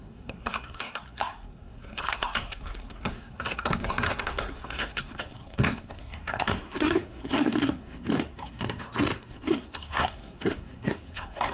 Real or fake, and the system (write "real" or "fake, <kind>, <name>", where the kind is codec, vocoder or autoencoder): fake, codec, SNAC